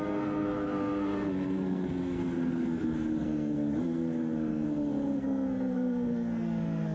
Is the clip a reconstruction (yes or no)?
yes